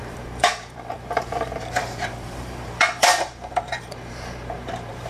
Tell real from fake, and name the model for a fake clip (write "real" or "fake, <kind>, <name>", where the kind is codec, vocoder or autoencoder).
fake, vocoder, BigVGAN v2